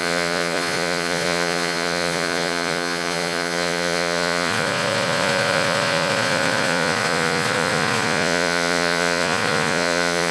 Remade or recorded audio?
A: remade